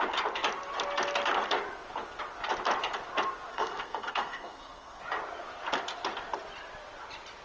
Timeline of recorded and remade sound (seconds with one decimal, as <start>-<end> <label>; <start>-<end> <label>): 0.0-3.5 recorded; 3.5-5.0 remade; 5.0-7.4 recorded